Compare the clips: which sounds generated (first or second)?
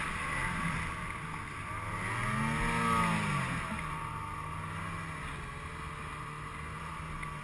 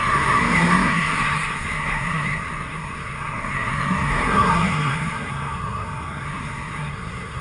second